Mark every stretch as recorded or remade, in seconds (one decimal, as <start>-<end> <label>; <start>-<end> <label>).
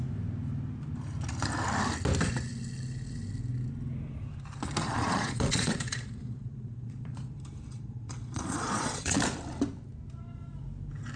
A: 0.0-4.8 recorded; 4.8-7.3 remade; 7.3-7.7 recorded; 7.7-9.2 remade; 9.2-11.2 recorded